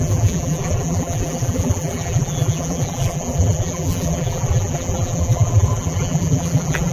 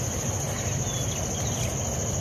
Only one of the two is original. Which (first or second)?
second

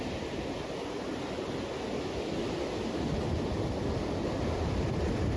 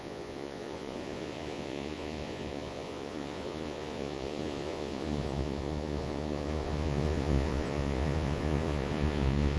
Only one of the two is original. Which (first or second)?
first